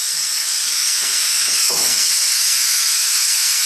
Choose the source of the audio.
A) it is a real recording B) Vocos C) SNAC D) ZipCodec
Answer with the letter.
C